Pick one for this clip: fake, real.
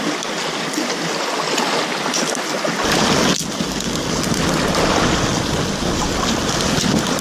real